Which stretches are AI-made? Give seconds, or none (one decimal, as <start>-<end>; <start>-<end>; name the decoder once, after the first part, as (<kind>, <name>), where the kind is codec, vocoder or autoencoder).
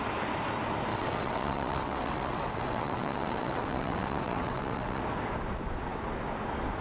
0.9-5.0 (vocoder, WaveNeXt)